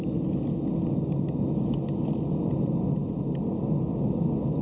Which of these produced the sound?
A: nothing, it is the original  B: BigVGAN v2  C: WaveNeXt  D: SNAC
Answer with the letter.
A